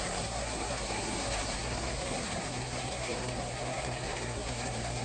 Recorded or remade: remade